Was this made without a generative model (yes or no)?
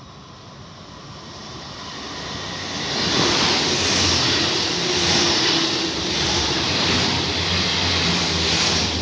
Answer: yes